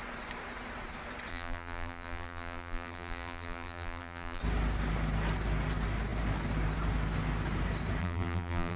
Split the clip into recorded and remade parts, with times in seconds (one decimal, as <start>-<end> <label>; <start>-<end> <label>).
0.0-1.3 recorded; 1.3-4.4 remade; 4.4-8.0 recorded; 8.0-8.8 remade